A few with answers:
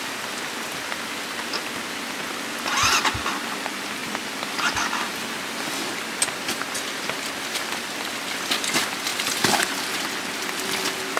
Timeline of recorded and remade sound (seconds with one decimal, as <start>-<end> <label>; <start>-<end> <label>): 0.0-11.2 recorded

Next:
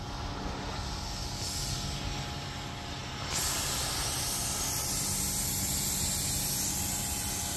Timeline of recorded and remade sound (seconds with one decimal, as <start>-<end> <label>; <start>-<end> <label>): 0.0-7.6 recorded

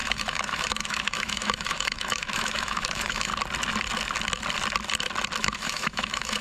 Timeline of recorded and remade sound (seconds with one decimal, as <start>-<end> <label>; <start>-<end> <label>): 0.0-3.3 remade; 3.3-5.4 recorded; 5.4-6.4 remade

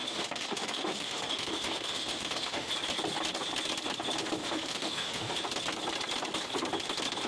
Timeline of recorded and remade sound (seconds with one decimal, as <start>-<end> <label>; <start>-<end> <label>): 0.0-2.7 remade; 2.7-4.4 recorded; 4.4-5.4 remade; 5.4-7.3 recorded

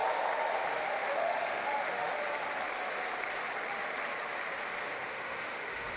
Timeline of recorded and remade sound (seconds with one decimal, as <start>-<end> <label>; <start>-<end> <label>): 0.0-0.8 recorded; 0.8-2.1 remade; 2.1-5.1 recorded; 5.1-6.0 remade

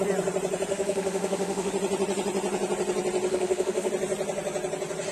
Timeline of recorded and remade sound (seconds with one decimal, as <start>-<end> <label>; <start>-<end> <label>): 0.0-0.7 recorded; 0.7-1.7 remade; 1.7-3.3 recorded; 3.3-3.9 remade; 3.9-5.1 recorded

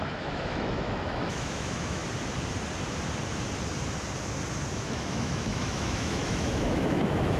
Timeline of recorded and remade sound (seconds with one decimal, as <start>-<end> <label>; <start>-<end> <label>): 0.0-2.0 remade; 2.0-4.7 recorded; 4.7-7.4 remade

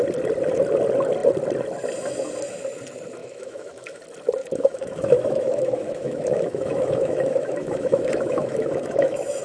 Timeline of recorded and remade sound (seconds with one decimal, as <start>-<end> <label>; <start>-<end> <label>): 0.0-3.2 recorded; 3.2-4.0 remade; 4.0-4.4 recorded; 4.4-9.4 remade